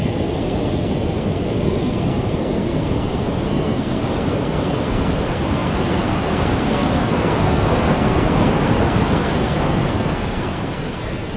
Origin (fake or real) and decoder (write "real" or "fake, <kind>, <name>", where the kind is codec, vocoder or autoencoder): fake, codec, SNAC